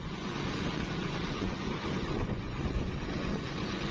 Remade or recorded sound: remade